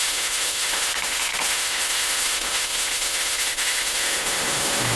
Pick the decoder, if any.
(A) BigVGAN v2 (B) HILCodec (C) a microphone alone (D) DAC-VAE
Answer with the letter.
D